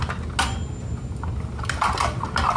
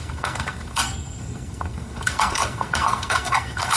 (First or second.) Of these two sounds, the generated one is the second